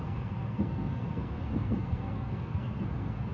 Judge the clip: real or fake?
fake